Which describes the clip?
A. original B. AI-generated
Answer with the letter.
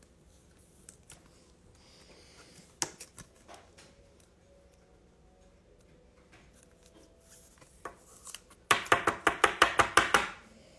A